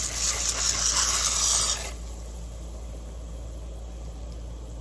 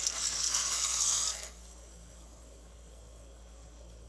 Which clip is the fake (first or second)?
second